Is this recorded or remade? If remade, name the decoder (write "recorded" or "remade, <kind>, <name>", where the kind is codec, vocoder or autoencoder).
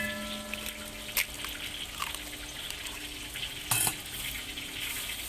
recorded